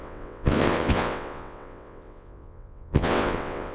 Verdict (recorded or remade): remade